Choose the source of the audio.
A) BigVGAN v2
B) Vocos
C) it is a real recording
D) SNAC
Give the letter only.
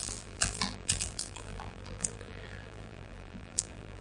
A